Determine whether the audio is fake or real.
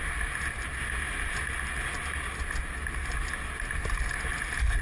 real